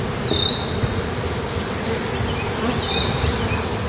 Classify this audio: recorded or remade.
recorded